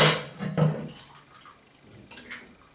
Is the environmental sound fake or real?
real